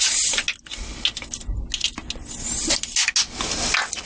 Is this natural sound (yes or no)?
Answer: yes